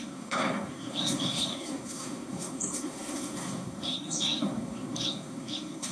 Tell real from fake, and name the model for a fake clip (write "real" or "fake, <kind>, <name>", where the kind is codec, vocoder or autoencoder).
fake, codec, SNAC